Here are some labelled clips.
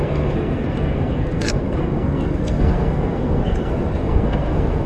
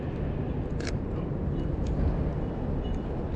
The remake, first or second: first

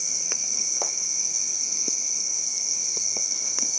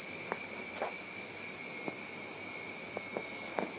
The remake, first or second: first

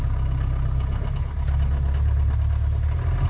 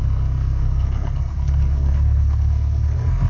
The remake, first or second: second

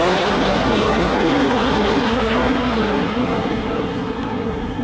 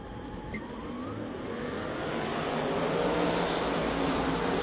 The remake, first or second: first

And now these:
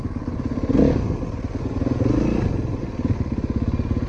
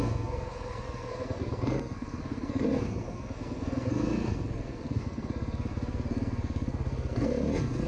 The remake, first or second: second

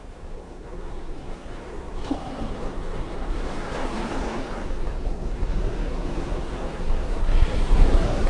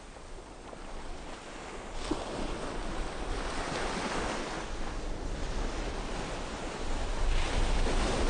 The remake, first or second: first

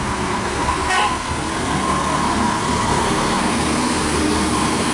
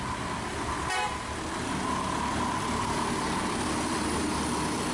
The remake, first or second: first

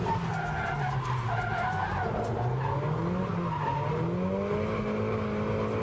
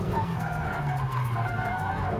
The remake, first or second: second